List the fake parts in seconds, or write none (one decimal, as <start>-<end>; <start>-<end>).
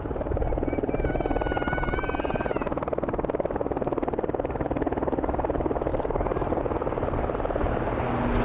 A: 5.9-6.6